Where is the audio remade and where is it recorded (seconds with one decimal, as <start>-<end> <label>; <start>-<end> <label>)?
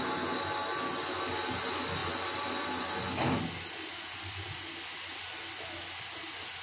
0.0-6.6 recorded